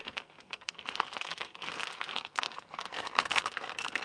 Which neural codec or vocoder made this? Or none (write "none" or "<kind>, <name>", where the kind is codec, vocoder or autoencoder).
codec, SNAC